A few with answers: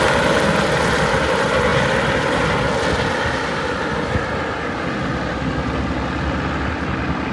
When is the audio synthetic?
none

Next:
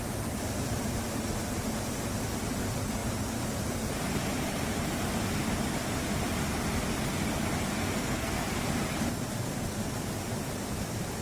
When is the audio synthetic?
7.8-8.4 (codec, SNAC)

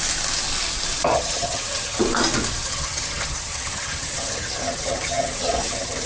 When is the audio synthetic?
1.1-2.0 (vocoder, HiFi-GAN); 2.6-6.1

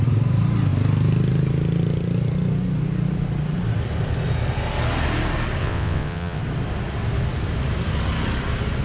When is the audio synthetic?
5.6-6.4 (vocoder, WaveNeXt)

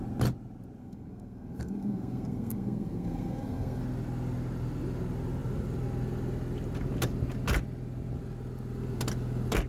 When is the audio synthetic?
0.8-3.8 (codec, SNAC)

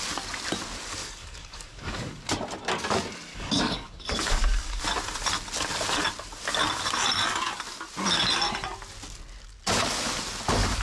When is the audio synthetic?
1.0-2.2 (codec, DAC); 3.3-4.8

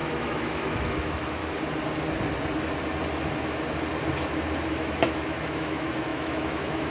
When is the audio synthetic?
0.0-1.4 (autoencoder, DAC-VAE); 4.7-6.9